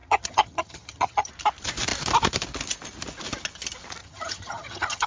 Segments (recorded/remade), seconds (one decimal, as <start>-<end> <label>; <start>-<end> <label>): 0.0-1.3 remade; 1.3-4.0 recorded; 4.0-5.1 remade